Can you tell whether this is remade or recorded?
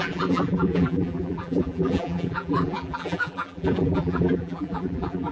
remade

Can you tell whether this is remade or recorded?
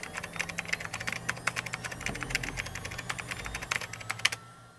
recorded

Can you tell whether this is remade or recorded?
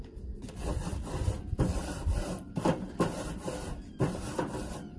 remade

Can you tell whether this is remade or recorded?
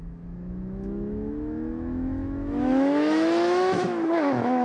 remade